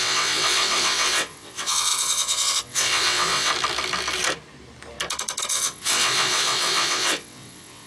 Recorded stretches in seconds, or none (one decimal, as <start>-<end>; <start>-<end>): 3.5-5.5